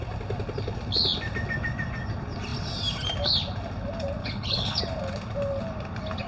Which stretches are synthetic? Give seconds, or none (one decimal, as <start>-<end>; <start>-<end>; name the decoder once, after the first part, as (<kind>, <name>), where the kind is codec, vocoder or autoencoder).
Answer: 4.2-4.8 (codec, HILCodec)